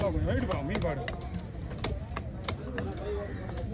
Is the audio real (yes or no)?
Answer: yes